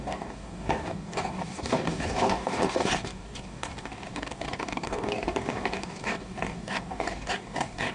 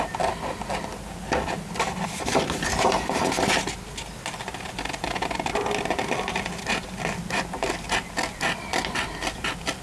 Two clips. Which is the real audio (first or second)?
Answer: second